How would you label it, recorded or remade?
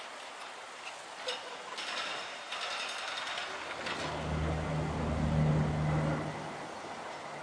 recorded